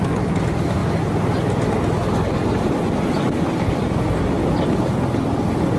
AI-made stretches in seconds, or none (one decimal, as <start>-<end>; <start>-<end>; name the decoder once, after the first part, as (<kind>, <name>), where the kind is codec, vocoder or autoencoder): none